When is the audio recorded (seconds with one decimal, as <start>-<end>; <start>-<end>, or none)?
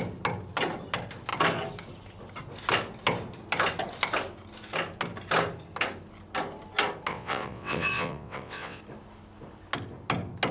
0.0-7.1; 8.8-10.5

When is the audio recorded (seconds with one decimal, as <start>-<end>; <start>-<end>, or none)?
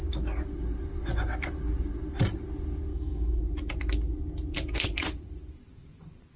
0.0-2.9; 3.4-6.4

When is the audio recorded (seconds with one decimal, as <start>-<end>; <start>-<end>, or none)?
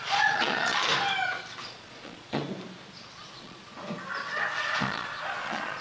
0.9-1.6; 2.4-3.2; 3.7-4.6